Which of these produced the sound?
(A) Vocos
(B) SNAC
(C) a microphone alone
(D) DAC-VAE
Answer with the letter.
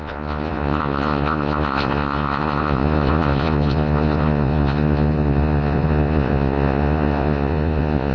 A